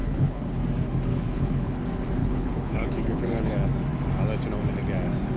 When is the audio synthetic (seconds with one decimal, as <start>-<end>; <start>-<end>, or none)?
0.0-0.6; 1.1-1.8; 2.2-3.5

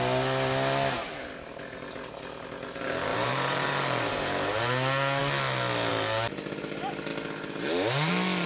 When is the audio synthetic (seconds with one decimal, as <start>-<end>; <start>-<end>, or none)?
3.1-4.6

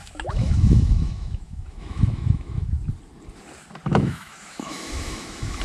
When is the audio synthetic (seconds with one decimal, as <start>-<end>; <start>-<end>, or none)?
0.0-2.8; 3.9-5.6

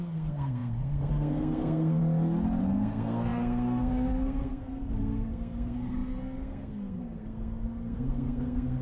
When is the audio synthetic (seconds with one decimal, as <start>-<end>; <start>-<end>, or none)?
0.0-2.0; 2.6-8.8

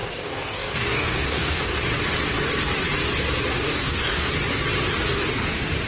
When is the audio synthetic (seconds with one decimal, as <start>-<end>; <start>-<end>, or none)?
0.0-1.8; 3.5-4.3

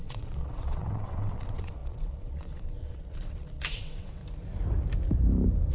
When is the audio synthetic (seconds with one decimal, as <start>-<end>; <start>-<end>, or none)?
0.0-4.2

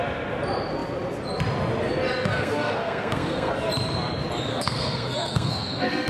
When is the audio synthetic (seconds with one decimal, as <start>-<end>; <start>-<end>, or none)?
2.3-3.5; 4.5-6.1